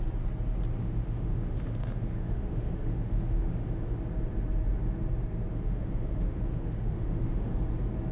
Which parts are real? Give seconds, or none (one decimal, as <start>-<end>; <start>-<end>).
0.0-0.8; 4.0-5.5; 7.5-8.1